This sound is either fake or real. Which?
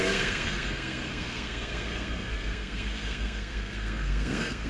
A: fake